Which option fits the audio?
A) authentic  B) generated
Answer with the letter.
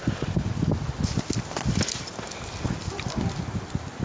A